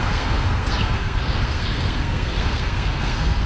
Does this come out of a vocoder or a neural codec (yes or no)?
yes